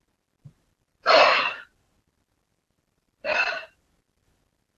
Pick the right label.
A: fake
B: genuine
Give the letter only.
B